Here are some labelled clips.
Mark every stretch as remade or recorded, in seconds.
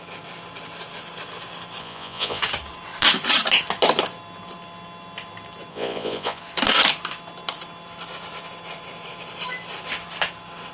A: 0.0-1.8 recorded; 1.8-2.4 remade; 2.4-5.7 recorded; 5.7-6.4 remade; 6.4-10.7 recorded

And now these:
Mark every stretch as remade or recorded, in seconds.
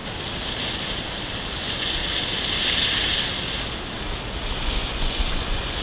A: 0.0-1.6 recorded; 1.6-2.0 remade; 2.0-4.6 recorded; 4.6-5.8 remade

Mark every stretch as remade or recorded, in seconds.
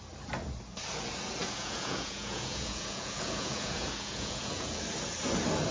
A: 0.0-1.4 recorded; 1.4-4.8 remade; 4.8-5.7 recorded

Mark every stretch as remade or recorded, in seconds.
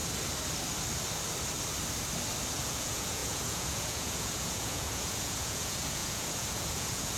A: 0.0-2.5 recorded; 2.5-7.2 remade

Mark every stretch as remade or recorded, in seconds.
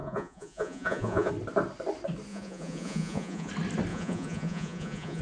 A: 0.0-1.3 remade; 1.3-2.3 recorded; 2.3-3.5 remade; 3.5-3.9 recorded; 3.9-5.2 remade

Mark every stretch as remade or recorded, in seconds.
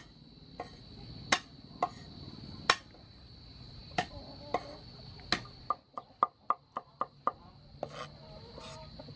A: 0.0-9.2 recorded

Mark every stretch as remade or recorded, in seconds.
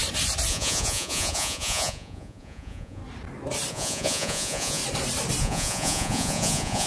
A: 0.0-0.5 recorded; 0.5-3.0 remade; 3.0-3.7 recorded; 3.7-4.8 remade; 4.8-5.4 recorded; 5.4-6.9 remade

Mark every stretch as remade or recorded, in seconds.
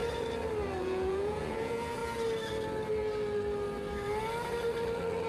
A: 0.0-0.8 recorded; 0.8-2.0 remade; 2.0-5.3 recorded